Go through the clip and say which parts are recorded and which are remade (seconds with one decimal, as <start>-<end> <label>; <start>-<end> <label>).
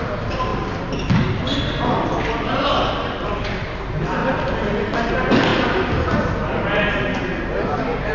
0.0-0.5 remade; 0.5-2.2 recorded; 2.2-4.2 remade; 4.2-5.1 recorded; 5.1-8.1 remade